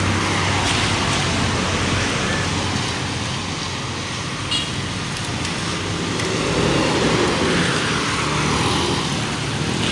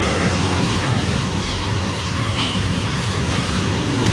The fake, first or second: second